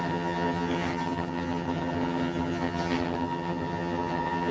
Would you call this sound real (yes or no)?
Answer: no